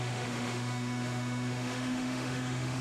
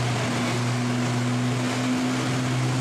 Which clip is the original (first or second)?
second